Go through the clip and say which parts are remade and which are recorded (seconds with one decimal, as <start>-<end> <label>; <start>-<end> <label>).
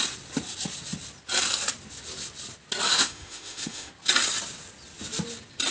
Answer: 0.0-2.9 recorded; 2.9-3.9 remade; 3.9-5.7 recorded